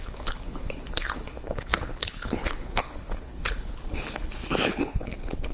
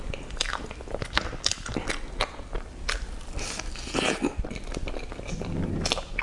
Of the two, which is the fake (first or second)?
first